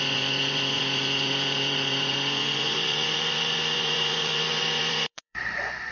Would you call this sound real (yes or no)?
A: no